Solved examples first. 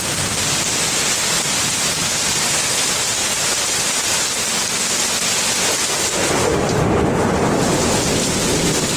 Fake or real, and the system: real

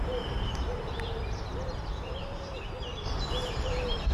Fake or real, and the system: fake, vocoder, BigVGAN v2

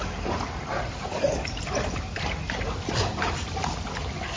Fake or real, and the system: real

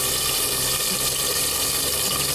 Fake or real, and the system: real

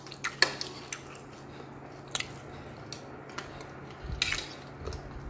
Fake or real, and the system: real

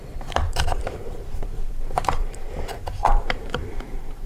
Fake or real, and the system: fake, vocoder, BigVGAN v2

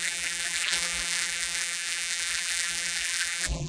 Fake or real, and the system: fake, vocoder, BigVGAN v2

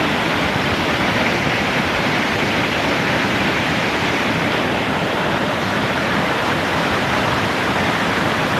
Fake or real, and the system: fake, vocoder, BigVGAN v2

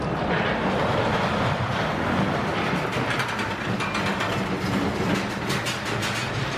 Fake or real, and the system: real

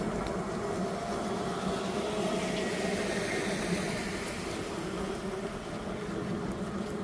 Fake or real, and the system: real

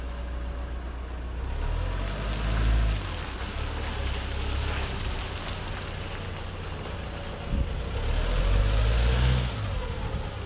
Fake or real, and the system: real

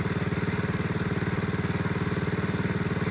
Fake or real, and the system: real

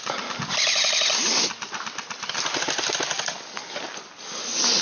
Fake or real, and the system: real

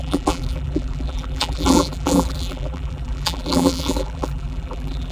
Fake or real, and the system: fake, vocoder, BigVGAN v2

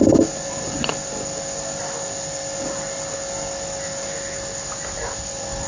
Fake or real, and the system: real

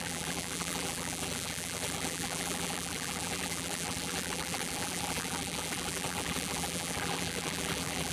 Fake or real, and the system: fake, vocoder, BigVGAN v2